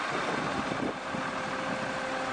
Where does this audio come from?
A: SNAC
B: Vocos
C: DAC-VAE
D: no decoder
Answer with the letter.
D